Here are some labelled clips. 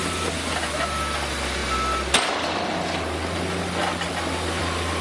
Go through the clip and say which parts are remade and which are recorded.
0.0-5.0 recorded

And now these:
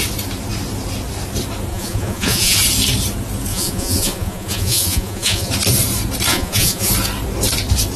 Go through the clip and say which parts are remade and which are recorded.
0.0-1.7 recorded; 1.7-2.6 remade; 2.6-3.5 recorded; 3.5-5.5 remade; 5.5-6.3 recorded; 6.3-6.9 remade; 6.9-8.0 recorded

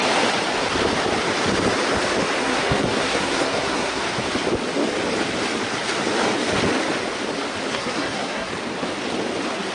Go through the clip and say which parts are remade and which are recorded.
0.0-2.4 recorded; 2.4-4.0 remade; 4.0-7.7 recorded; 7.7-8.5 remade; 8.5-9.7 recorded

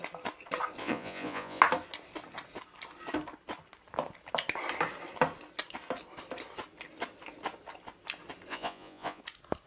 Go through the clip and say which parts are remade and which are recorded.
0.0-0.8 recorded; 0.8-1.6 remade; 1.6-8.5 recorded; 8.5-9.2 remade; 9.2-9.7 recorded

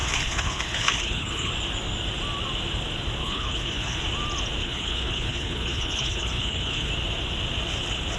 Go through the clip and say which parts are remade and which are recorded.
0.0-1.5 remade; 1.5-3.2 recorded; 3.2-4.0 remade; 4.0-4.6 recorded; 4.6-6.9 remade; 6.9-8.2 recorded

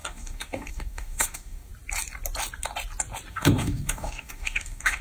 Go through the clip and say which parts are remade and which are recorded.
0.0-1.7 remade; 1.7-3.3 recorded; 3.3-5.0 remade